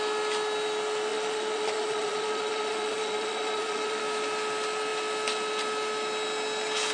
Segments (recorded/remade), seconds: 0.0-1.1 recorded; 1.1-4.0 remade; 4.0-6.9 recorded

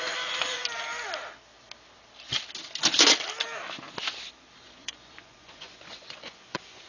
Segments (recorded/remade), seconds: 0.0-0.6 remade; 0.6-4.6 recorded; 4.6-6.9 remade

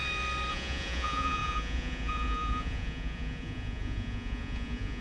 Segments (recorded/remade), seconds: 0.0-0.5 recorded; 0.5-5.0 remade

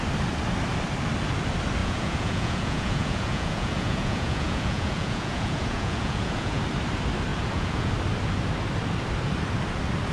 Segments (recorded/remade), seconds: 0.0-1.8 recorded; 1.8-6.6 remade; 6.6-7.3 recorded; 7.3-7.9 remade; 7.9-10.1 recorded

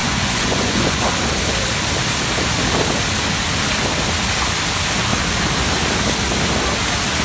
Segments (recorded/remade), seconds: 0.0-1.0 remade; 1.0-7.2 recorded

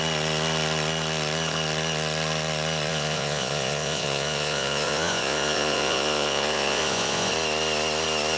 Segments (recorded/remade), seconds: 0.0-2.9 recorded; 2.9-7.3 remade; 7.3-8.4 recorded

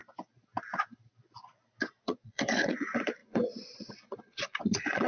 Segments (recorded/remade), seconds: 0.0-1.9 recorded; 1.9-5.1 remade

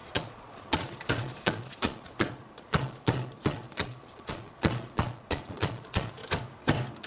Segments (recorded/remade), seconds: 0.0-6.2 remade; 6.2-7.1 recorded